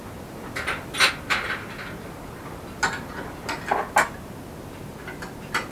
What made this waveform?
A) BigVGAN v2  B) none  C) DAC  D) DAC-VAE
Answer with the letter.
B